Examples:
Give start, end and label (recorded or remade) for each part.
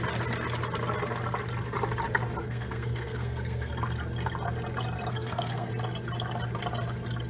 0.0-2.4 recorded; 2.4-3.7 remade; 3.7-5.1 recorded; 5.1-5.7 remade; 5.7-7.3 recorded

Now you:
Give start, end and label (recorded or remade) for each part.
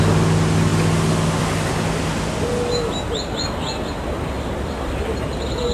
0.0-5.7 recorded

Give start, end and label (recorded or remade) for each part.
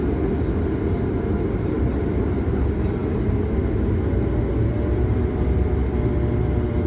0.0-6.9 recorded